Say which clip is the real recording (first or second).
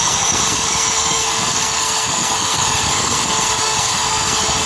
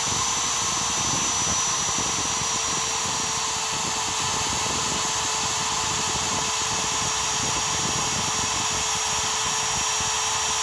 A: second